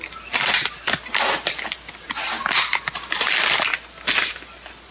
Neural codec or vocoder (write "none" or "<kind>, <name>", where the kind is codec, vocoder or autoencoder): none